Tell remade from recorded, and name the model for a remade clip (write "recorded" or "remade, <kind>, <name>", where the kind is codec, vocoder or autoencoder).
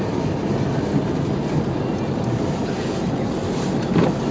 recorded